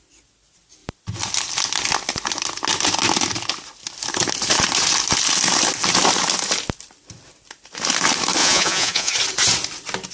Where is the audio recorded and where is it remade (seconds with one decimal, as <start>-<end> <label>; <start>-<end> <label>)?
0.0-8.4 recorded; 8.4-9.1 remade; 9.1-10.1 recorded